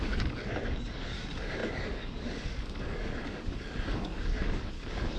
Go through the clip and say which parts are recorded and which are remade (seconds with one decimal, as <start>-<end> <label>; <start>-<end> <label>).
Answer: 0.0-5.2 remade